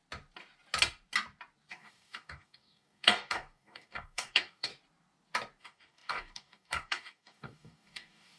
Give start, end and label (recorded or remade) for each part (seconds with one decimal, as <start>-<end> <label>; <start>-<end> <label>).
0.0-1.7 recorded; 1.7-4.7 remade; 4.7-5.6 recorded; 5.6-8.4 remade